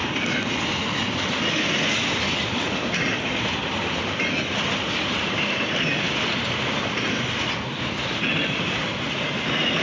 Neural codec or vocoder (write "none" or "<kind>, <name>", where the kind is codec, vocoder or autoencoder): none